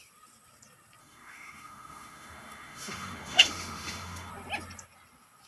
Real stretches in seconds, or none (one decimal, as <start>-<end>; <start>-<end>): 0.0-1.0; 4.3-5.5